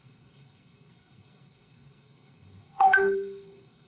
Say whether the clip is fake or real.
fake